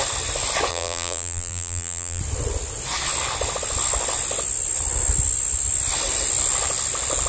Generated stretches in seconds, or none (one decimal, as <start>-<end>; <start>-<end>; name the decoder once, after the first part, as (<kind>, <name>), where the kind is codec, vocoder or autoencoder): 0.7-2.2 (vocoder, BigVGAN v2)